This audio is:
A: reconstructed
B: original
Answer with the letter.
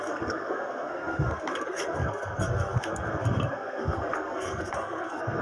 A